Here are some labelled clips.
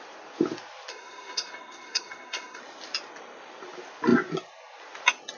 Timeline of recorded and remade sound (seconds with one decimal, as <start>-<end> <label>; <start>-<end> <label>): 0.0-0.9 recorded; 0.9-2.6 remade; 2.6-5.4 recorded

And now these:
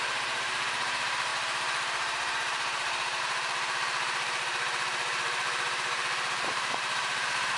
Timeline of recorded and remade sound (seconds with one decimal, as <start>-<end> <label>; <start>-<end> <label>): 0.0-1.3 remade; 1.3-3.2 recorded; 3.2-7.6 remade

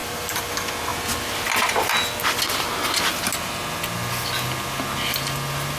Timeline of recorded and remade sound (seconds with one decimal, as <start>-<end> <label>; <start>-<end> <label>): 0.0-0.5 remade; 0.5-5.8 recorded

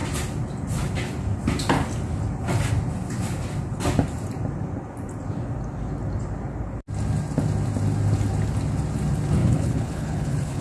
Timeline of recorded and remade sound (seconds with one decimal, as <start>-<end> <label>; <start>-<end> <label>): 0.0-9.4 recorded; 9.4-10.6 remade

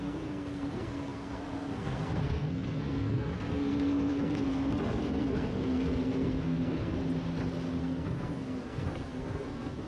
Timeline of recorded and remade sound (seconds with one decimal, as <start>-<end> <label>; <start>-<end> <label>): 0.0-6.9 remade; 6.9-7.8 recorded; 7.8-9.9 remade

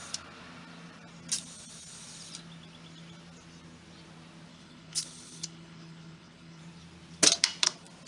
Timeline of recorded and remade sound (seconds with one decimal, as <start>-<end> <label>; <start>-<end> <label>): 0.0-4.5 recorded; 4.5-6.6 remade; 6.6-8.1 recorded